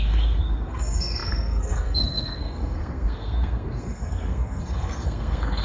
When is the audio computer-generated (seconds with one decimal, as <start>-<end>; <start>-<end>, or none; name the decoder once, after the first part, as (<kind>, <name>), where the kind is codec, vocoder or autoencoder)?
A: 0.0-5.6 (codec, SNAC)